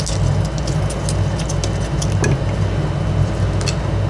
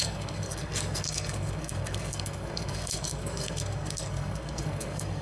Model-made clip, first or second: second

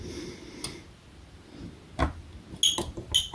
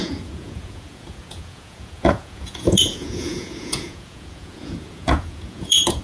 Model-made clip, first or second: second